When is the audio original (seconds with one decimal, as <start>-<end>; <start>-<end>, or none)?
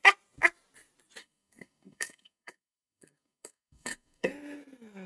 0.0-1.2; 4.3-5.1